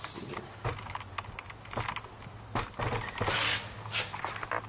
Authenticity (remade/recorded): recorded